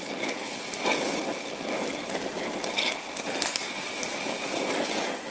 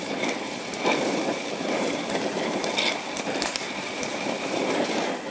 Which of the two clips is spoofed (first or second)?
second